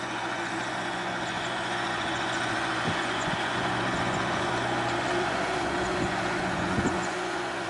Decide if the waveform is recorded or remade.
remade